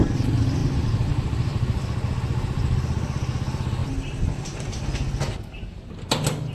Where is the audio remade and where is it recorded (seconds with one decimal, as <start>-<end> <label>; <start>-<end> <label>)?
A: 0.0-6.5 recorded